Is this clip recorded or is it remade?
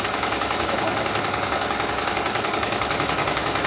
remade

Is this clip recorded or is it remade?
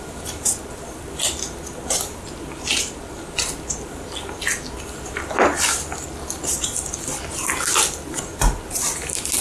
recorded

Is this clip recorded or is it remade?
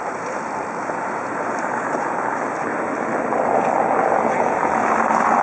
recorded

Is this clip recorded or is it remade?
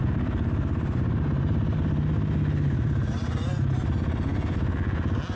recorded